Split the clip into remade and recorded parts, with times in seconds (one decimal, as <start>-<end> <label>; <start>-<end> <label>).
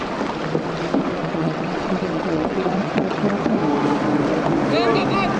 0.0-1.2 recorded; 1.2-3.2 remade; 3.2-5.4 recorded